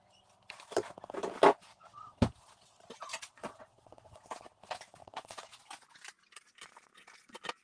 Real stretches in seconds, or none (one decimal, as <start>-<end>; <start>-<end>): 0.0-1.7; 2.2-3.1; 4.2-5.0; 5.6-7.6